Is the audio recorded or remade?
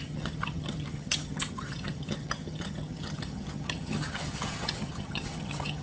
remade